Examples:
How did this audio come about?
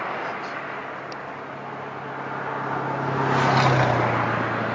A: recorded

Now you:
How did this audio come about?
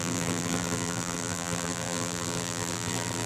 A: remade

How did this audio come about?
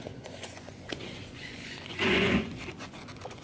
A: remade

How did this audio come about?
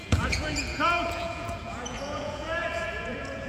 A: remade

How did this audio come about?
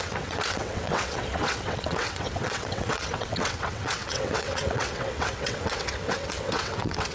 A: remade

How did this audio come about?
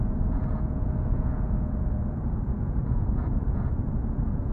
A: remade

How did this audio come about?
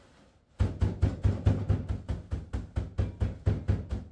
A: recorded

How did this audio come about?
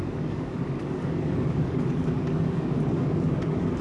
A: remade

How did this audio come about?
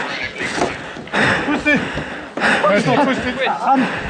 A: recorded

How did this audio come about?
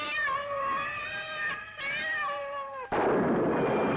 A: recorded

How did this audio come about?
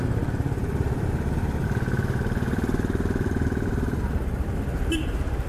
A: recorded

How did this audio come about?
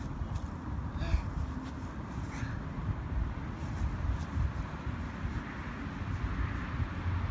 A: recorded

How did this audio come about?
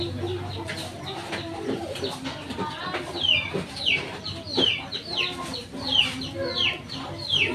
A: recorded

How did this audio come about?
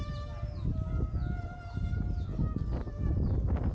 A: recorded